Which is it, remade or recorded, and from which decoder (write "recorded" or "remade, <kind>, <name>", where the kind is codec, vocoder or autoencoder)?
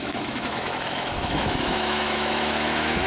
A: remade, autoencoder, DAC-VAE